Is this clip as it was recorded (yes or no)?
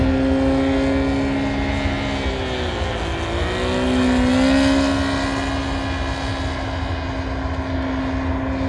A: yes